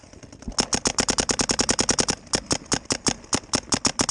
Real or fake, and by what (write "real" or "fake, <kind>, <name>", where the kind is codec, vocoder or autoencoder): real